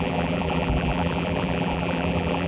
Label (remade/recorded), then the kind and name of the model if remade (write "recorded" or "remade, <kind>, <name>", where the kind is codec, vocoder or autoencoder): remade, vocoder, BigVGAN v2